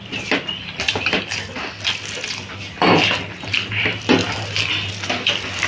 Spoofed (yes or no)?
no